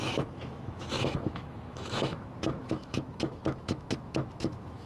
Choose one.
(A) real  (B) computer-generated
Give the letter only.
B